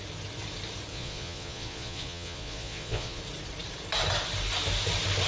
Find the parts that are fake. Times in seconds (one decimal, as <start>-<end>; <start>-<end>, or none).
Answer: 0.9-3.2